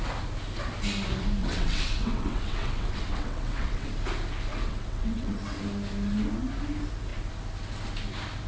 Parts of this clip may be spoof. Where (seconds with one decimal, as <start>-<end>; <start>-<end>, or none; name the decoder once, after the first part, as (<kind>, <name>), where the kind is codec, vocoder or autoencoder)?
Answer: 1.4-3.9 (vocoder, WaveNeXt); 4.5-5.4